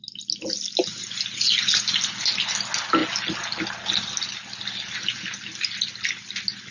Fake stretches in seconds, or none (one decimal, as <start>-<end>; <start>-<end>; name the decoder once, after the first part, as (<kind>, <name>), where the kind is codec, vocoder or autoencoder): none